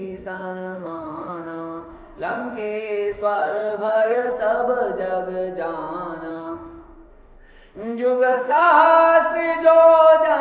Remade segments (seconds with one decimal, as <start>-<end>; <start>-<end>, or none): 0.0-4.3; 6.3-8.7